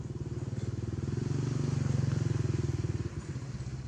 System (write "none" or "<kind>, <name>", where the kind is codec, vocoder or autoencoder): none